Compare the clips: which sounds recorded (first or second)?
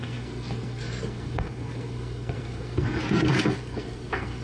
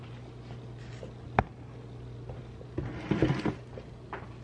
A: second